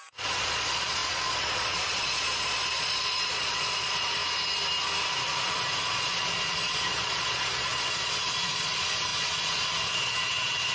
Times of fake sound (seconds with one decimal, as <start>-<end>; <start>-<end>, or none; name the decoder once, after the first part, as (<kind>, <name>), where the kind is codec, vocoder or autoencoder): 0.0-4.2 (vocoder, Vocos); 5.2-10.7